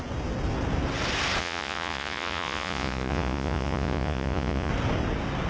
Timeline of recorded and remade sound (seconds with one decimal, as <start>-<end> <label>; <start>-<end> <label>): 0.0-1.4 recorded; 1.4-4.7 remade; 4.7-5.5 recorded